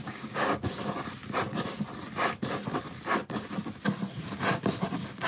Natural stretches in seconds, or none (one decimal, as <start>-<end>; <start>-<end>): 0.7-5.3